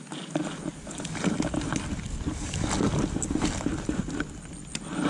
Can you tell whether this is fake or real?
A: real